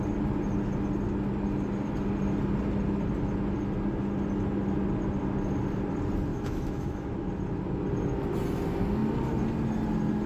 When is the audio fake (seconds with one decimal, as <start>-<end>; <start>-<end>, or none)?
6.3-7.3